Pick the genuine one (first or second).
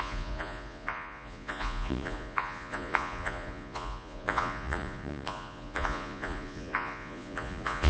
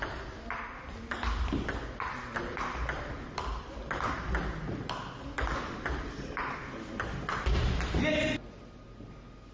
second